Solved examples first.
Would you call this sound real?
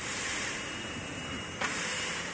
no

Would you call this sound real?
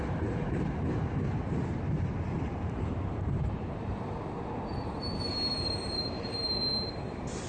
no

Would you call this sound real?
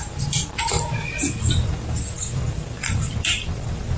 no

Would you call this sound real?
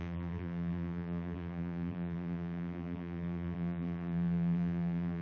no